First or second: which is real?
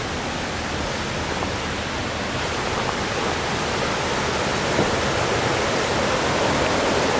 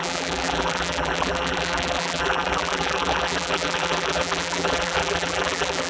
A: first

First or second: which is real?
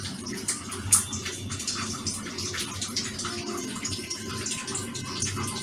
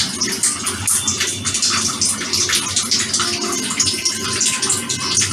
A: second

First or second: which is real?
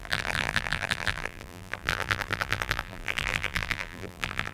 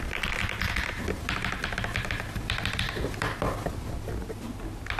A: second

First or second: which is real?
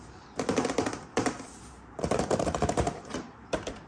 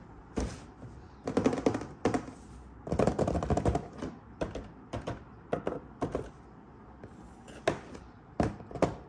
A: second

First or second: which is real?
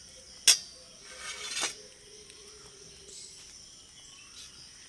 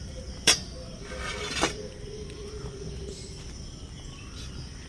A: first